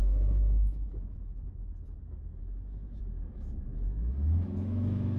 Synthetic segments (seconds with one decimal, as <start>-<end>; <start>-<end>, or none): 0.0-5.2